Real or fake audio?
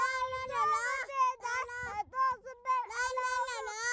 real